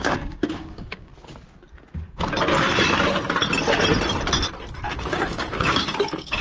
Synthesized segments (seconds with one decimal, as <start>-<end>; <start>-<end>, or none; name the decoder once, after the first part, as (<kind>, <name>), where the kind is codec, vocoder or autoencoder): 0.0-1.1 (codec, DAC); 4.9-6.4